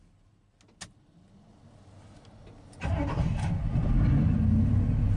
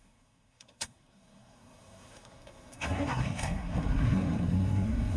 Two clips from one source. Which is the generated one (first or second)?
second